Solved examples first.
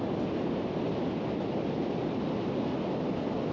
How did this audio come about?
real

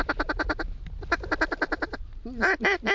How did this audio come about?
real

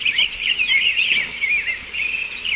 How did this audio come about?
fake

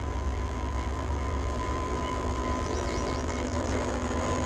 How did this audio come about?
fake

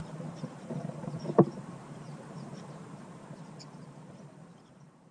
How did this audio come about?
fake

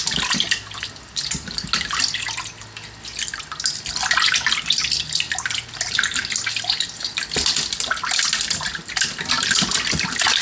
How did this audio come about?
real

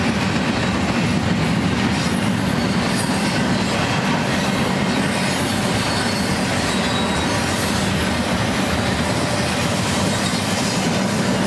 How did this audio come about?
real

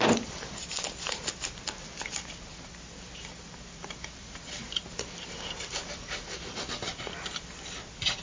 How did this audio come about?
fake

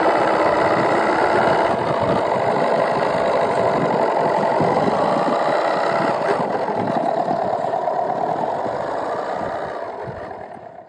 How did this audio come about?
fake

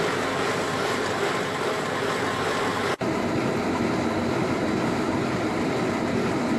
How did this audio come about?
real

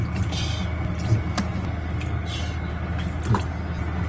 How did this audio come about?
real